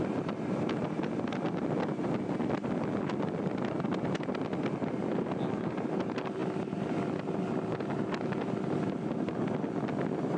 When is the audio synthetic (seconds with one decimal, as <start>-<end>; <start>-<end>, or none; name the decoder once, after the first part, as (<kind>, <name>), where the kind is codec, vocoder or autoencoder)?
none